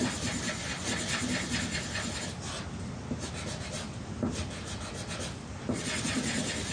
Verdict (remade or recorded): recorded